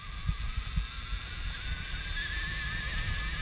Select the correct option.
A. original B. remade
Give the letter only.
A